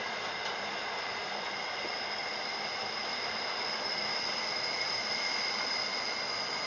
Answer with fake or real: fake